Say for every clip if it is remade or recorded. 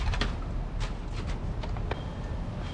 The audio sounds recorded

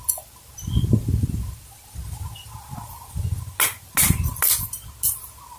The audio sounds recorded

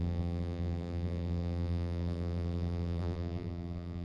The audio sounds remade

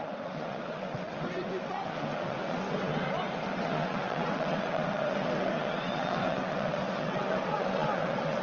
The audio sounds remade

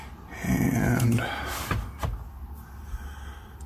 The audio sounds recorded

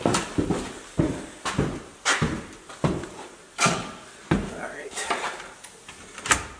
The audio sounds recorded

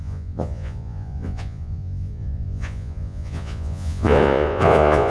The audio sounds remade